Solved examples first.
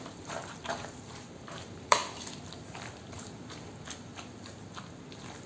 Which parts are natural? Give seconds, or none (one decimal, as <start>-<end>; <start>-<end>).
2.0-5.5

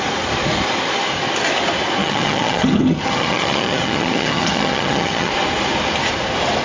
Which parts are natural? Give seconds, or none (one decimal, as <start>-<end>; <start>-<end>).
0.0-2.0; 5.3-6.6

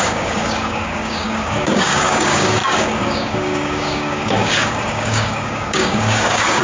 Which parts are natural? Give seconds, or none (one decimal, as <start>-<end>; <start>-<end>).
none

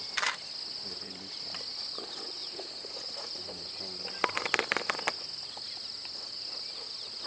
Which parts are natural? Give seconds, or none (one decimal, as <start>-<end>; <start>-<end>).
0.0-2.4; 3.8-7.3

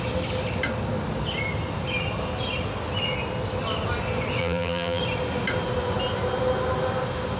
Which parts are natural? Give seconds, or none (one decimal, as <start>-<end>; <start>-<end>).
0.0-4.4; 5.0-7.4